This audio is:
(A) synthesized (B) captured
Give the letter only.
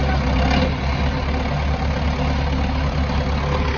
B